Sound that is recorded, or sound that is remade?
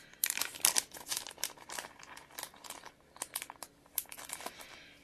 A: recorded